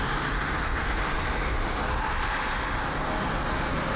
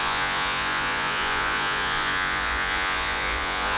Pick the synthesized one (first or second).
second